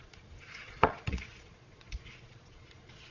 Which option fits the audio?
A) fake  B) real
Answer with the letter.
A